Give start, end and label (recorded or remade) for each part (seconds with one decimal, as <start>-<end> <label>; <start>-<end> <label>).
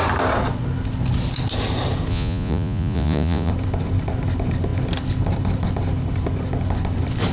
0.0-2.1 recorded; 2.1-3.5 remade; 3.5-7.3 recorded